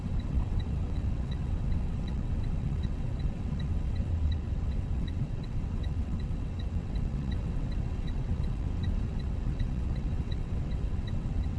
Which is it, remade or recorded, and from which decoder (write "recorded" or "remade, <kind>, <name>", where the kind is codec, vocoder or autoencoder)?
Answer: remade, vocoder, WaveNeXt